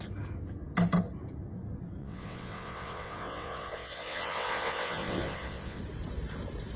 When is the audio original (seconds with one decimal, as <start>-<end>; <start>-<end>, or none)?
0.0-2.0; 5.8-6.8